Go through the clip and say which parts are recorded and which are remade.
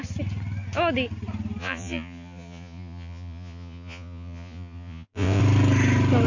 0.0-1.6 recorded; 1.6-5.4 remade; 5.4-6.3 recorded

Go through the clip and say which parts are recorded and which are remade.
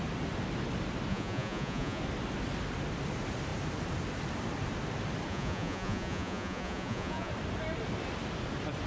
0.0-1.1 recorded; 1.1-2.0 remade; 2.0-5.3 recorded; 5.3-7.3 remade; 7.3-8.9 recorded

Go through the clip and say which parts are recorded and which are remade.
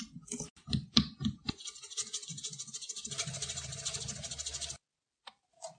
0.0-5.8 recorded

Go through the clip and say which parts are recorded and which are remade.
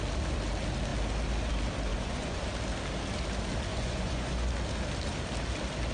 0.0-1.9 recorded; 1.9-2.4 remade; 2.4-3.7 recorded; 3.7-4.5 remade; 4.5-5.9 recorded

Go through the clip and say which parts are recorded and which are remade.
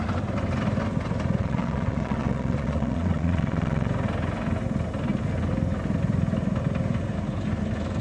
0.0-1.4 recorded; 1.4-3.9 remade; 3.9-8.0 recorded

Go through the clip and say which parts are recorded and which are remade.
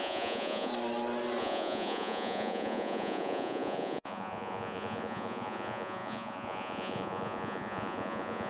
0.0-0.7 remade; 0.7-1.4 recorded; 1.4-8.5 remade